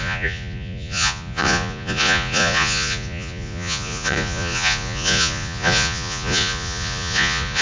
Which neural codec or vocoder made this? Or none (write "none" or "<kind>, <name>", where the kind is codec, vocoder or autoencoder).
vocoder, Vocos